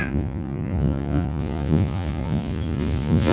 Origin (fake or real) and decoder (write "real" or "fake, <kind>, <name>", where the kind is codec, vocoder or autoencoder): fake, vocoder, Vocos